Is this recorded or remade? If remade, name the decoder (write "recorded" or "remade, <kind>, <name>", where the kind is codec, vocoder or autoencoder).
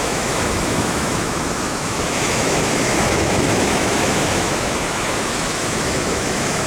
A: remade, autoencoder, DAC-VAE